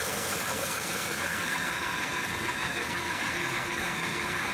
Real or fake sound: fake